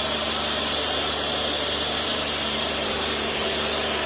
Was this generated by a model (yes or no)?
yes